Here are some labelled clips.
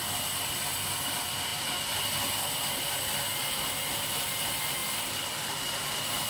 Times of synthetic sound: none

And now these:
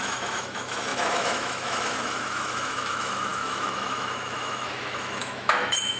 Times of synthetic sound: 0.0-6.0 (autoencoder, DAC-VAE)